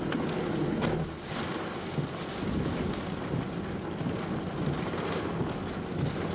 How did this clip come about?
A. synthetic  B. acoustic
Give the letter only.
B